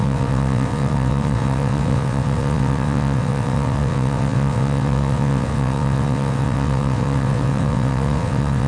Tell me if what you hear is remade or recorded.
remade